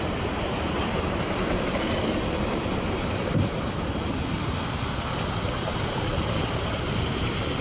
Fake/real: fake